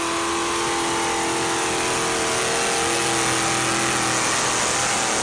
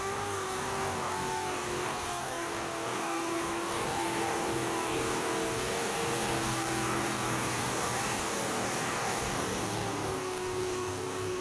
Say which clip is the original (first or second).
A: first